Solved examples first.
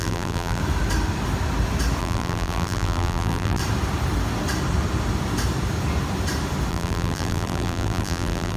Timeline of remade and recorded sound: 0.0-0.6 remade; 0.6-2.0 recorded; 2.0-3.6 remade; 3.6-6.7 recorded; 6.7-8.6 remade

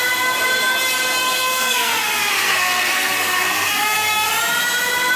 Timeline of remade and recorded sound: 0.0-1.2 recorded; 1.2-4.3 remade; 4.3-5.2 recorded